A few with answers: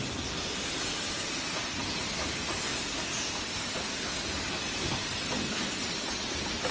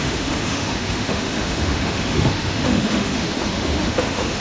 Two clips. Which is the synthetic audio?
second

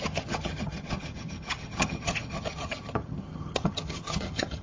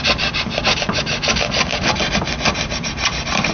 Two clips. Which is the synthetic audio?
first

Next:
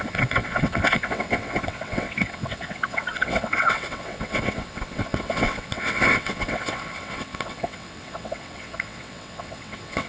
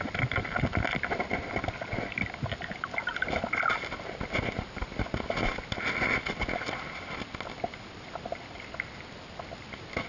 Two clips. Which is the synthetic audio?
first